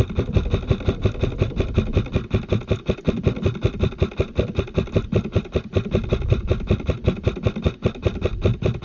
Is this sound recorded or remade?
recorded